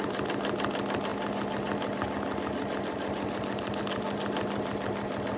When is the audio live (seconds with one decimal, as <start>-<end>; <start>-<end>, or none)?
0.0-5.4